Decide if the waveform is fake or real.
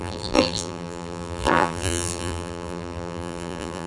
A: fake